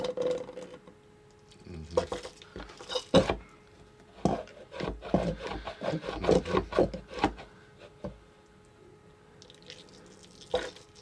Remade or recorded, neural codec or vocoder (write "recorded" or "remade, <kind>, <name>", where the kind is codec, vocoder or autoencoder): recorded